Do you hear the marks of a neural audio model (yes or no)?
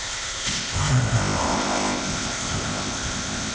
yes